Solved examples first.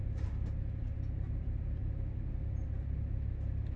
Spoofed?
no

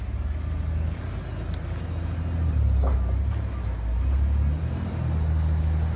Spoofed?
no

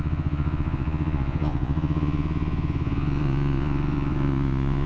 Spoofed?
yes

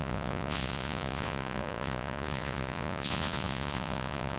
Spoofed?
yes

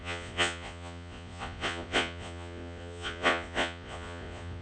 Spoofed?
yes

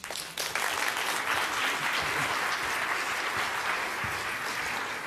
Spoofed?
no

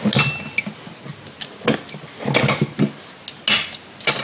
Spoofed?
no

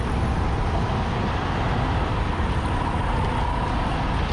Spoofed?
no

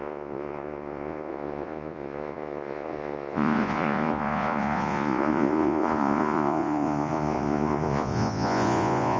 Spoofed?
yes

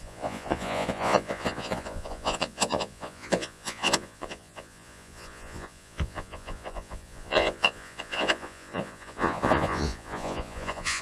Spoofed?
yes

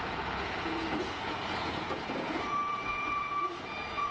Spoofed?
yes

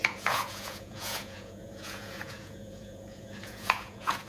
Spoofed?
yes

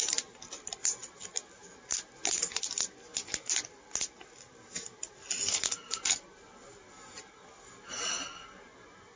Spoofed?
no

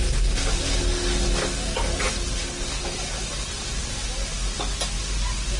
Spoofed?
no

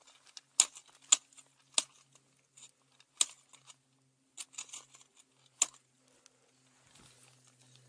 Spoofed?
no